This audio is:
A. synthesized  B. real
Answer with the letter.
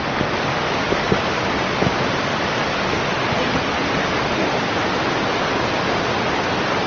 B